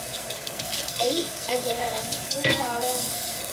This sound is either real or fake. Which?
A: fake